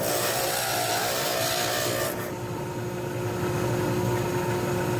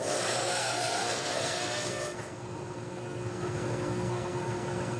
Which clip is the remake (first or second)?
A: second